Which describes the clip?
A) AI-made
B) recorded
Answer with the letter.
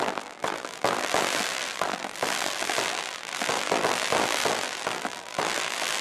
A